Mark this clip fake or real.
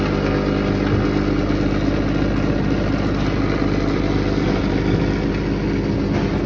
real